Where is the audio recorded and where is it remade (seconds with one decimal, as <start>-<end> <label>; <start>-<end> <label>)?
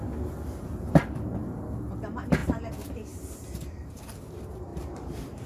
0.0-2.4 recorded; 2.4-4.1 remade; 4.1-4.7 recorded; 4.7-5.5 remade